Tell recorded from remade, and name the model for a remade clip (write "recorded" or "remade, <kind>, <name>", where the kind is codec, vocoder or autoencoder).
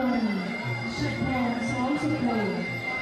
recorded